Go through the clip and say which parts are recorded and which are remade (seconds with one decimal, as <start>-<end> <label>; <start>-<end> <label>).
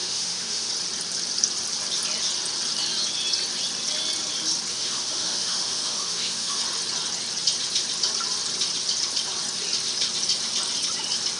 0.0-0.7 remade; 0.7-4.7 recorded; 4.7-6.6 remade; 6.6-11.4 recorded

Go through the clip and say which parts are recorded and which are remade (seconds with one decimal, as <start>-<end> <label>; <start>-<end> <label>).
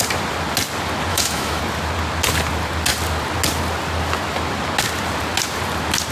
0.0-1.1 recorded; 1.1-1.6 remade; 1.6-6.1 recorded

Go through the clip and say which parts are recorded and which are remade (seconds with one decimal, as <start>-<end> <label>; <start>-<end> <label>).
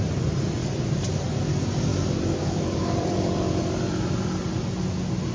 0.0-1.9 recorded; 1.9-4.6 remade; 4.6-5.3 recorded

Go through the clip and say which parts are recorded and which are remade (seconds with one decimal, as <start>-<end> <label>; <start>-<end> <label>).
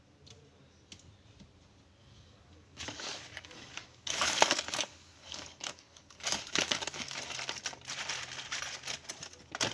0.0-2.0 recorded; 2.0-7.2 remade; 7.2-9.7 recorded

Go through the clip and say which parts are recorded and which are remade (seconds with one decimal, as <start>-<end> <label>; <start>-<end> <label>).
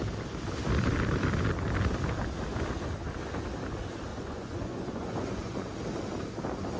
0.0-4.1 recorded; 4.1-5.7 remade; 5.7-6.8 recorded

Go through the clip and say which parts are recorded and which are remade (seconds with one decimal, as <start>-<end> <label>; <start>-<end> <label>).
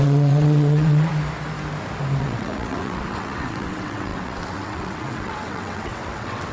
0.0-1.1 remade; 1.1-2.2 recorded; 2.2-6.5 remade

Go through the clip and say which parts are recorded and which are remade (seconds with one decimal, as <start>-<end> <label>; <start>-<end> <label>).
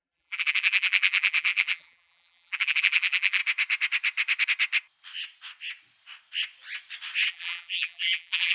0.0-3.4 remade; 3.4-7.3 recorded; 7.3-8.5 remade